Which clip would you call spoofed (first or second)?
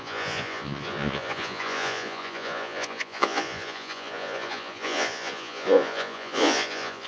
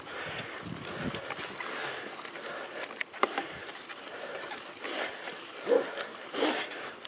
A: first